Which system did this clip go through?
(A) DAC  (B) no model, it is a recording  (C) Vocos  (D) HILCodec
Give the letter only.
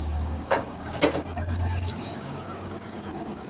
A